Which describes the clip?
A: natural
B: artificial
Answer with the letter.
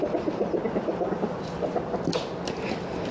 A